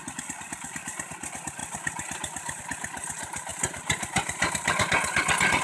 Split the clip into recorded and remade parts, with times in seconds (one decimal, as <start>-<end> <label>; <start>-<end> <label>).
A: 0.0-3.5 recorded; 3.5-4.7 remade; 4.7-5.6 recorded